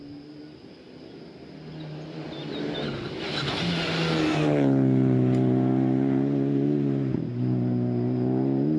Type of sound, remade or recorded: recorded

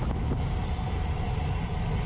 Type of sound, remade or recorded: recorded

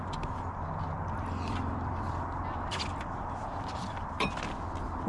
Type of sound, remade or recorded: remade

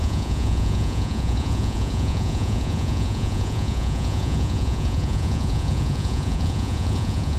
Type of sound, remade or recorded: remade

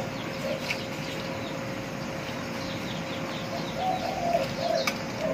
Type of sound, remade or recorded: recorded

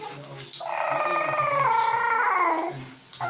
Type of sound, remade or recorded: recorded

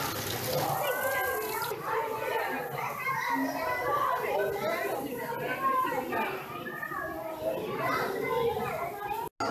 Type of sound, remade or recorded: recorded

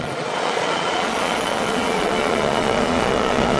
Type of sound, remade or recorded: remade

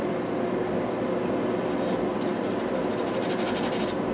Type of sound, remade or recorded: recorded